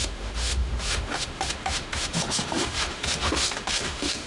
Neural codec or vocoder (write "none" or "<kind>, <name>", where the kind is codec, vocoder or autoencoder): autoencoder, DAC-VAE